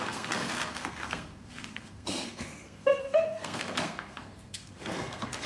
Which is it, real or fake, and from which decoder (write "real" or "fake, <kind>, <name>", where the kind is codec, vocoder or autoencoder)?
fake, codec, SNAC